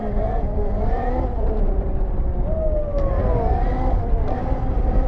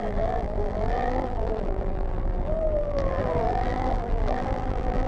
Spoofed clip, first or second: second